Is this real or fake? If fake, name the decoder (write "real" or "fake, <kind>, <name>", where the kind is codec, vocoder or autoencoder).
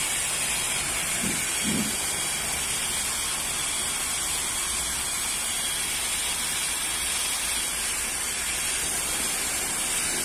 real